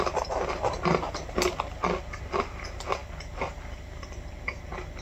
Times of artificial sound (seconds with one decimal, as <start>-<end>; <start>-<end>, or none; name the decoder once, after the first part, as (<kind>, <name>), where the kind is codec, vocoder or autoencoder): none